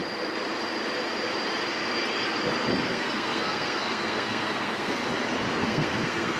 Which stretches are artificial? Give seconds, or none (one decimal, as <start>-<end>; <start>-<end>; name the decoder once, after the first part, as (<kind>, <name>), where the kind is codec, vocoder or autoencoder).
2.9-5.0 (codec, SNAC); 5.6-6.4